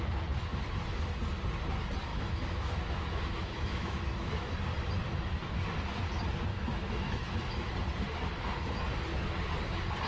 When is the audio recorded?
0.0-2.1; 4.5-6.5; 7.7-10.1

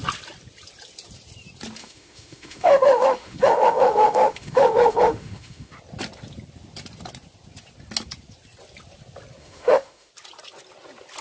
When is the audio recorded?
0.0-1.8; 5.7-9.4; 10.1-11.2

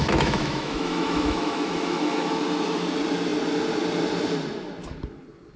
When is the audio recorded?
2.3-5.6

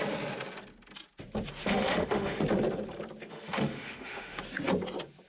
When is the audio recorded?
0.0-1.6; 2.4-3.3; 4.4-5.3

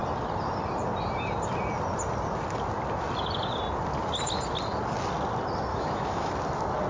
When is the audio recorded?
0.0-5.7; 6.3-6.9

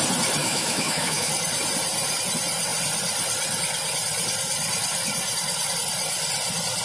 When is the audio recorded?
0.0-0.4; 1.3-6.8

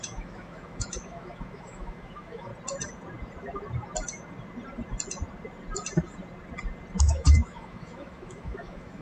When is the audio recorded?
2.5-7.0